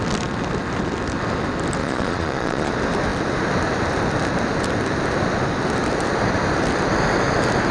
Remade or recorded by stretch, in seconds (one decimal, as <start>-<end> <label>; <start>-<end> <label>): 0.0-1.8 recorded; 1.8-2.7 remade; 2.7-7.7 recorded